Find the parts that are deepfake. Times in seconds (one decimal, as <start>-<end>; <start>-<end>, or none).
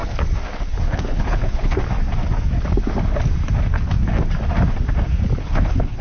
0.8-1.8; 5.4-6.0